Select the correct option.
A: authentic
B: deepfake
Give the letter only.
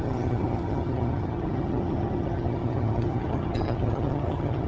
B